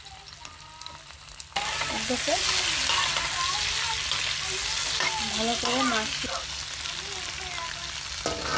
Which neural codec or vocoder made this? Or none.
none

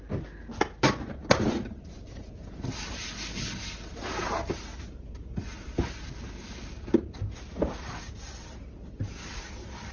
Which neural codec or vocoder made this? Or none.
none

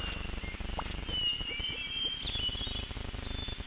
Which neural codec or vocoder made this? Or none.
none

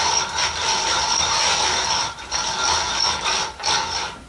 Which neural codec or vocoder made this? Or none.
none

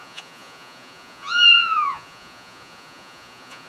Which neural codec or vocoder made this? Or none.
vocoder, Vocos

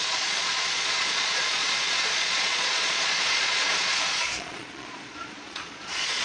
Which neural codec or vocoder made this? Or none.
vocoder, Vocos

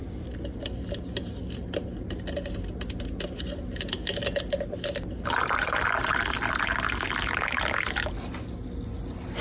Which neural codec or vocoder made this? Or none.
none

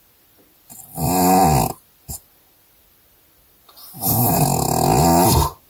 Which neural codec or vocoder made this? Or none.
none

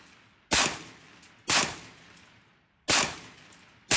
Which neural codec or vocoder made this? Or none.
none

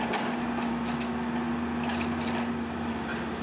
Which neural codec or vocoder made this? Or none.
none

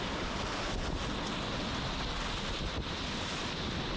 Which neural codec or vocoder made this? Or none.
none